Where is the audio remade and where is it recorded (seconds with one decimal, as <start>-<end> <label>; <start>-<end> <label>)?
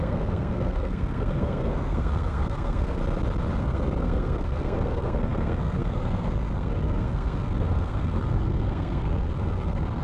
0.0-3.0 remade; 3.0-3.6 recorded; 3.6-10.0 remade